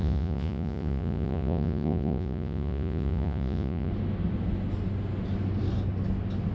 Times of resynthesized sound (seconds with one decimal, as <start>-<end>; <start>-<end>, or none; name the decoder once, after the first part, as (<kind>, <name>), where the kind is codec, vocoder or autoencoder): 0.0-3.9 (vocoder, Vocos)